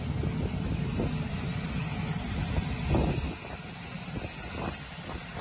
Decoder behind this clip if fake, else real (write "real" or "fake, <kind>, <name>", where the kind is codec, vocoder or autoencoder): real